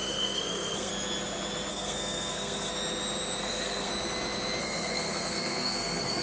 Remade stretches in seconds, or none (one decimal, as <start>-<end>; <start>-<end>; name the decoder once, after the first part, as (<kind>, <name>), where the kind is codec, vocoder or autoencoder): 0.0-0.9 (codec, SNAC); 1.7-2.7; 3.4-3.9; 4.6-6.2